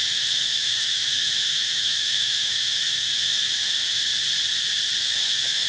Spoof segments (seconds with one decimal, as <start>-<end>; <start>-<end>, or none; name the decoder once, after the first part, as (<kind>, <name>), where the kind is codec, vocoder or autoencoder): 0.0-4.1 (autoencoder, DAC-VAE); 5.0-5.7